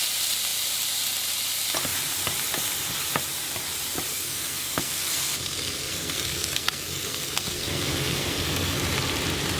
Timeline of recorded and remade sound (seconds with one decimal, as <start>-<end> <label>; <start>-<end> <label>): 0.0-4.1 recorded; 4.1-8.8 remade; 8.8-9.6 recorded